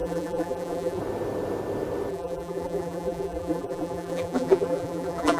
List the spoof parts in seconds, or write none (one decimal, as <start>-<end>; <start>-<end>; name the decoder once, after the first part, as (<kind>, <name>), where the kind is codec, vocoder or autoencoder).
0.0-1.0 (vocoder, BigVGAN v2); 2.1-5.4